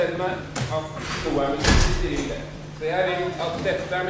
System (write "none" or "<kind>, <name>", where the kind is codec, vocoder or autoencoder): none